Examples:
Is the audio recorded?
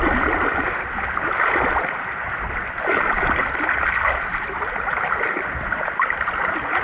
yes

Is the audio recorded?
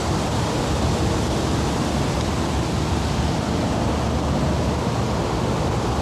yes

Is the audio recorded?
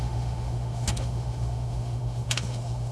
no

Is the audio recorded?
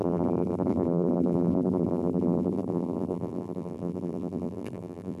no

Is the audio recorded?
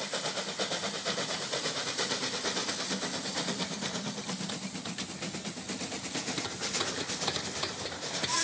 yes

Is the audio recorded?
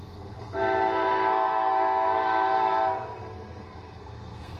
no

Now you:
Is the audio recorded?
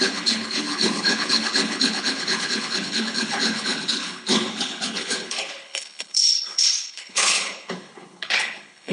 no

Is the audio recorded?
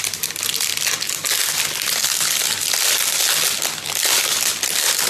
yes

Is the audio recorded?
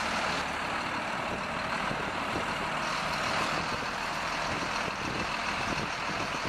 no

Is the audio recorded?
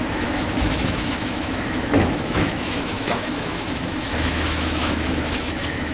no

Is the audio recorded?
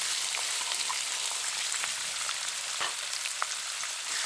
no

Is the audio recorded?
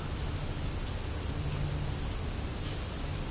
yes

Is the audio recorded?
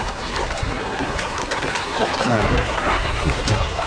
no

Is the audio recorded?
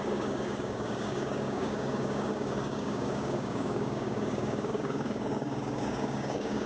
no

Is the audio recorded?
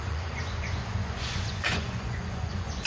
no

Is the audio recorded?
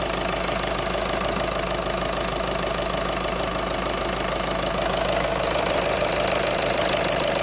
no